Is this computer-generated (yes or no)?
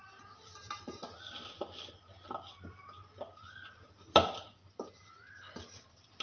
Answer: no